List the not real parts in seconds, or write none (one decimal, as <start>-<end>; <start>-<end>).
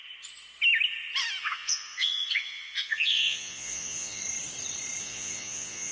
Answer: 1.4-4.2; 5.0-5.9